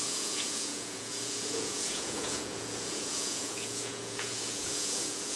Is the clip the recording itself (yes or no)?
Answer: no